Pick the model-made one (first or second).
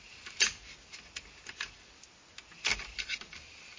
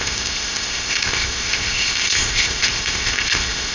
second